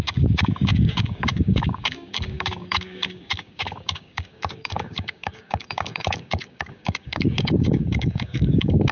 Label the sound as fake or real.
fake